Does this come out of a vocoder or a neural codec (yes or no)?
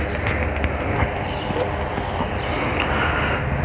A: no